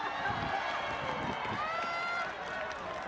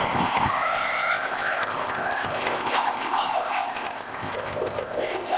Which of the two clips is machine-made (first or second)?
second